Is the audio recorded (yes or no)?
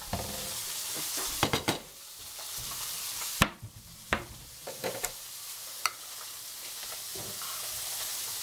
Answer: no